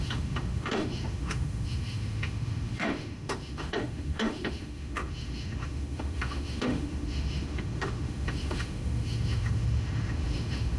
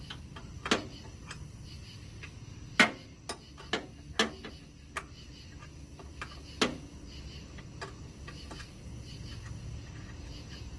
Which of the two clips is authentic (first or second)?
second